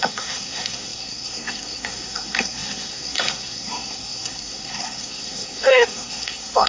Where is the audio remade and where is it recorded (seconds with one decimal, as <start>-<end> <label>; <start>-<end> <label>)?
0.0-6.7 remade